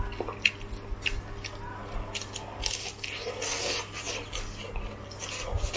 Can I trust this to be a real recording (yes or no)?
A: yes